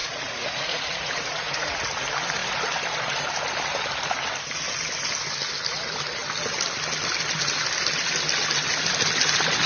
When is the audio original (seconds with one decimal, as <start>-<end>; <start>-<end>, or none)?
1.8-9.7